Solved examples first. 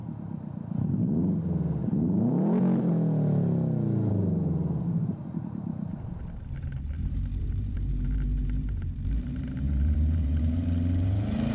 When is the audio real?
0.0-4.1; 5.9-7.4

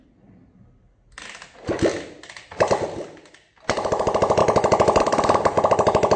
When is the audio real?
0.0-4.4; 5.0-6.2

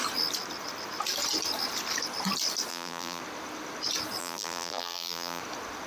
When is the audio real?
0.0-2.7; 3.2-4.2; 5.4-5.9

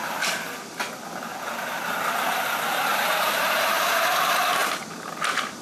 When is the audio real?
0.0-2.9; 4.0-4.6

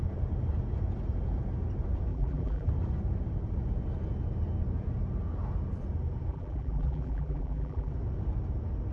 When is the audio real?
0.0-2.1; 2.7-6.3; 7.9-8.9

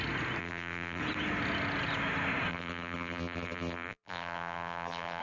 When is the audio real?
0.0-0.4; 1.0-2.5

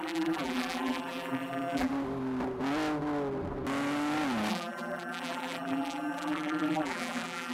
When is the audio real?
1.9-4.5

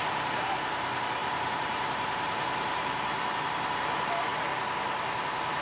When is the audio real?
0.0-1.2; 3.4-5.6